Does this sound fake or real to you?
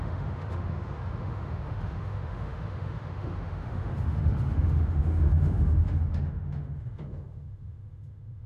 fake